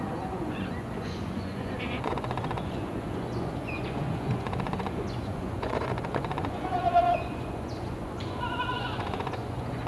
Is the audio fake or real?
fake